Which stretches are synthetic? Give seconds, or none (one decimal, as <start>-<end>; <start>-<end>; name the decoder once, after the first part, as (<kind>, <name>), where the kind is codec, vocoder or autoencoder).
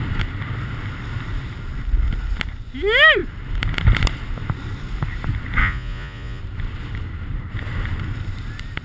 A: 5.6-6.4 (vocoder, Vocos)